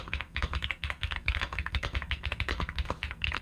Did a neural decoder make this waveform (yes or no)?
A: yes